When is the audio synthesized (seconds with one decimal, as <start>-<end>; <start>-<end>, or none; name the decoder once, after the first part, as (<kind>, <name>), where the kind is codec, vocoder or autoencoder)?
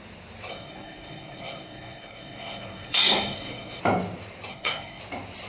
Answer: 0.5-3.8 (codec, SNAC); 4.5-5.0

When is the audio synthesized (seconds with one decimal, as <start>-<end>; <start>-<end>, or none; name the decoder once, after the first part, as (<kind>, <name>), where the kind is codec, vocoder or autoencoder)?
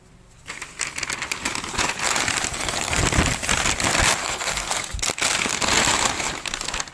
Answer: 2.5-3.0 (codec, SNAC); 4.2-4.7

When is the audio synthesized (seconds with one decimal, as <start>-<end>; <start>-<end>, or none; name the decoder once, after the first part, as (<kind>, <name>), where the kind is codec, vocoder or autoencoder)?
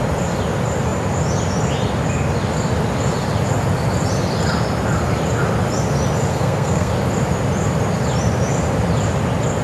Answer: 6.3-6.9 (codec, SNAC)